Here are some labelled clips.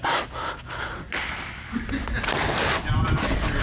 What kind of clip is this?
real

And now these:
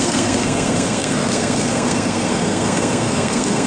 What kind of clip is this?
fake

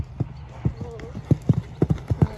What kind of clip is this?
real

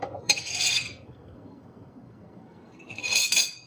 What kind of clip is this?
fake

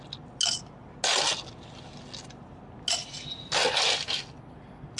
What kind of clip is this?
real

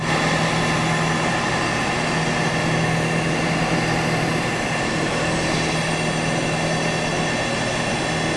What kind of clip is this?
real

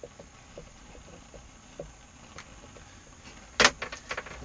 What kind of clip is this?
real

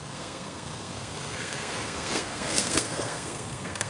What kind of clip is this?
fake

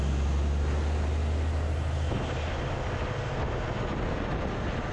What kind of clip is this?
real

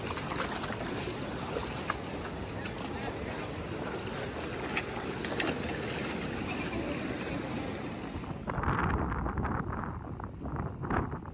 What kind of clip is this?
real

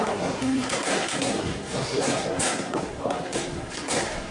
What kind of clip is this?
fake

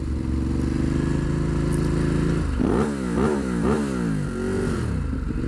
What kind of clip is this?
real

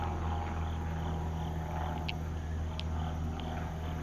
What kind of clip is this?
real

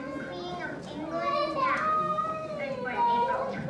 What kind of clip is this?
real